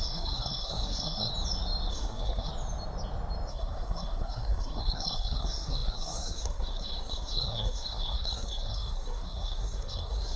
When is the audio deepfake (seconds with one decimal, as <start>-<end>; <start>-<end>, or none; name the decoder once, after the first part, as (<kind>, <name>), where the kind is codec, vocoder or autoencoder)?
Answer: 0.0-1.3 (codec, SNAC); 1.9-2.5; 3.5-10.4